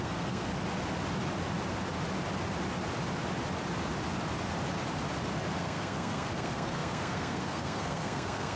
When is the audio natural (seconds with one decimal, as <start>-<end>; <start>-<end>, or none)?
0.5-5.6